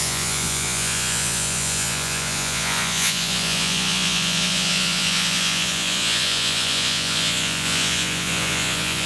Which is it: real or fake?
fake